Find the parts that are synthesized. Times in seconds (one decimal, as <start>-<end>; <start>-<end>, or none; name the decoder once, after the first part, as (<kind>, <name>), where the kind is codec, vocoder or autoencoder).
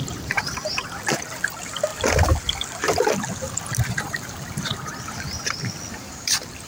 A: 0.0-1.9 (vocoder, BigVGAN v2); 3.9-4.7; 6.0-6.7